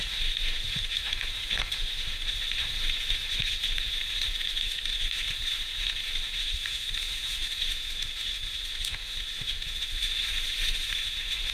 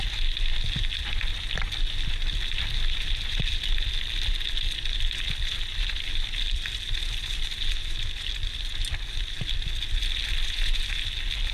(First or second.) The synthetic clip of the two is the first